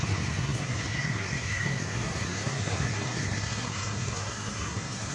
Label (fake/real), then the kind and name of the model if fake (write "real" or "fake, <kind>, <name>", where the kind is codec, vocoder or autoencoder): fake, codec, SNAC